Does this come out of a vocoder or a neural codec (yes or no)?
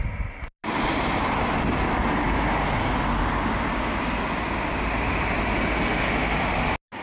no